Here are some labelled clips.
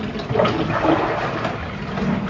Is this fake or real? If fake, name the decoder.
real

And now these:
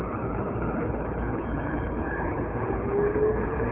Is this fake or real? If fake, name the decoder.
fake, codec, HILCodec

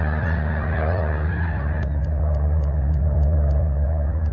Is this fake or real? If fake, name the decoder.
fake, vocoder, Vocos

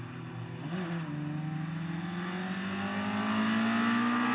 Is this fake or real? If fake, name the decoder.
real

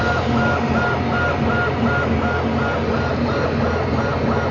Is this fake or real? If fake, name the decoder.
real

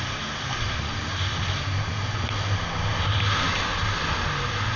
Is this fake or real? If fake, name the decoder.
real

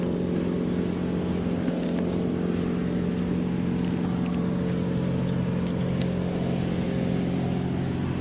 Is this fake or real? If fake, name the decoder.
real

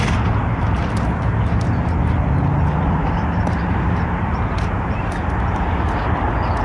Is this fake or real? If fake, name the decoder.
real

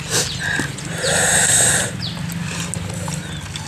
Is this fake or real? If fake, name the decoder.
real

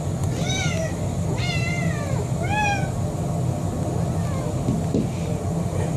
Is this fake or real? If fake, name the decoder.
real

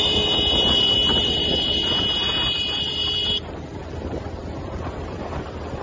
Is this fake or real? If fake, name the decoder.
fake, vocoder, BigVGAN v2